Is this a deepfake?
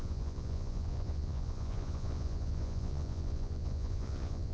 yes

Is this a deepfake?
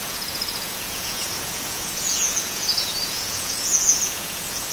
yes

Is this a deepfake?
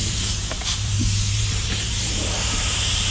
yes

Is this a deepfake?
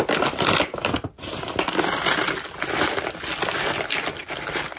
no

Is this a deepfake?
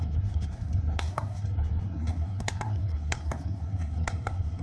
yes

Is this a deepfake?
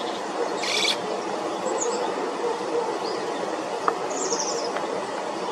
no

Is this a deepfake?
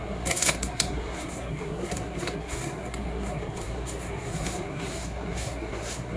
yes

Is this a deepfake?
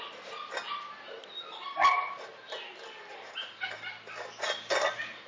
no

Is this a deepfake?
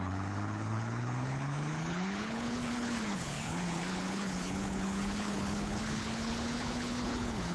yes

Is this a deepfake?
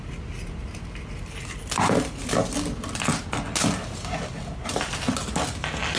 no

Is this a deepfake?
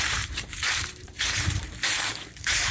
yes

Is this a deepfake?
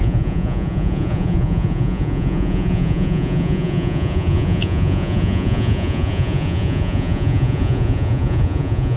yes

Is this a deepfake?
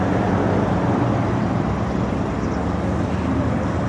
no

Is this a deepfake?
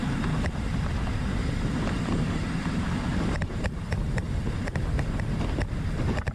yes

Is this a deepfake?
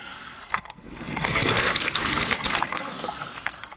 yes